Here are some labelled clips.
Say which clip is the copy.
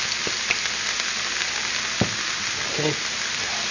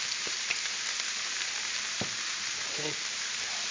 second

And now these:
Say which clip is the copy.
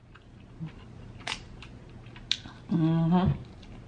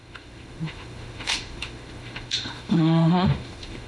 second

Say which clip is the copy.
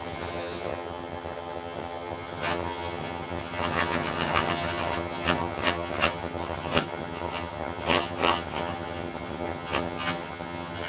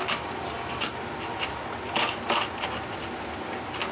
first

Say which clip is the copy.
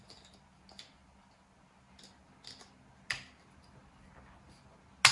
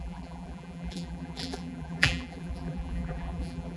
second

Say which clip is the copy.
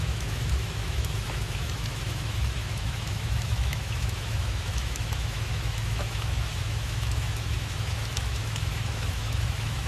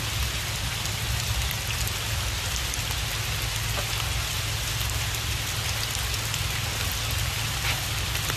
first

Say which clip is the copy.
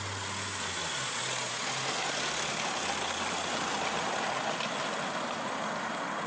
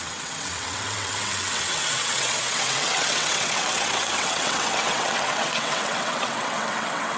second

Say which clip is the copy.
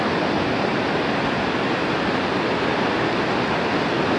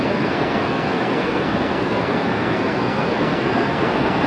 second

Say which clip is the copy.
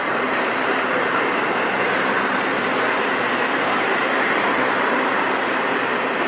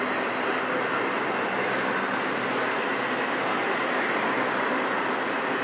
first